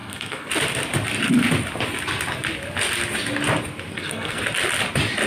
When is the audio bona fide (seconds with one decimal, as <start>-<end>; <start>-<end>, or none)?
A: 0.5-3.9; 4.4-5.3